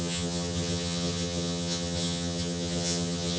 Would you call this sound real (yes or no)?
no